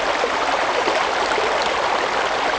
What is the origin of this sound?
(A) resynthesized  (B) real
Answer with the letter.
B